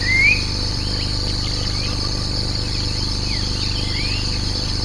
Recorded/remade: recorded